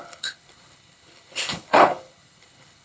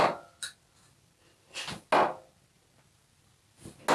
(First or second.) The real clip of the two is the second